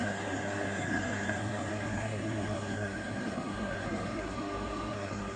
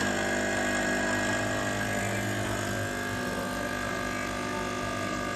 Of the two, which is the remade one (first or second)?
first